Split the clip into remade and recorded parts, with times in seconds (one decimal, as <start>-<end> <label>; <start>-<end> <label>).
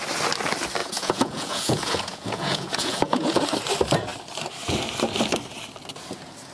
0.0-0.8 recorded; 0.8-3.4 remade; 3.4-6.5 recorded